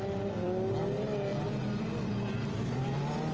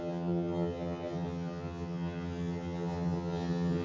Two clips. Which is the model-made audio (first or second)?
second